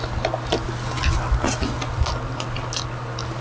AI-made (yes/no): no